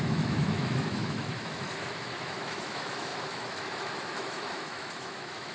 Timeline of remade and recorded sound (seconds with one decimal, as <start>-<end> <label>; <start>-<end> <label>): 0.0-5.5 remade